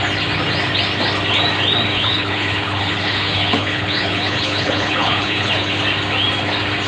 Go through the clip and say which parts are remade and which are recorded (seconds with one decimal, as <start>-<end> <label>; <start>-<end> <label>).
0.0-1.9 recorded; 1.9-5.7 remade; 5.7-6.9 recorded

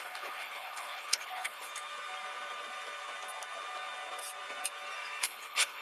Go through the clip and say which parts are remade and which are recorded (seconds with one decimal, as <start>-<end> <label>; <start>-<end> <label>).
0.0-1.7 remade; 1.7-5.2 recorded; 5.2-5.8 remade

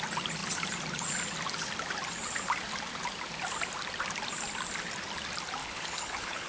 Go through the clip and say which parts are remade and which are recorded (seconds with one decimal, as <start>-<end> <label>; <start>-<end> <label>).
0.0-5.6 recorded; 5.6-6.5 remade